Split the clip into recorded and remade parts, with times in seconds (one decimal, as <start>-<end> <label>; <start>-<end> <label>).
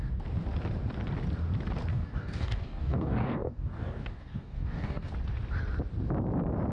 0.0-1.9 recorded; 1.9-5.1 remade; 5.1-6.7 recorded